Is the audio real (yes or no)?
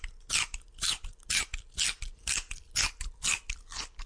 yes